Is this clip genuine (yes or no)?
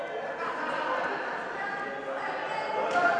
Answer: yes